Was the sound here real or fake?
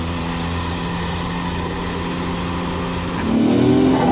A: real